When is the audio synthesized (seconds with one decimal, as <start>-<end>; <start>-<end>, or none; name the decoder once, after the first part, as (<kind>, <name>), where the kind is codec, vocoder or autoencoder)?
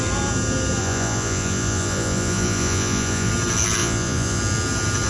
0.8-3.3 (vocoder, Vocos); 3.8-4.4